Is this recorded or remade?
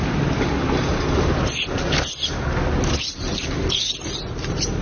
recorded